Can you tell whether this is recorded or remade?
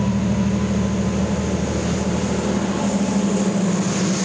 recorded